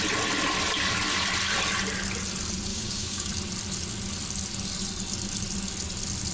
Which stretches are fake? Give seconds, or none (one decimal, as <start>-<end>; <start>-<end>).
2.7-3.3